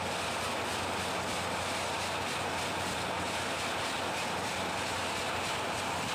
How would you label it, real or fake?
real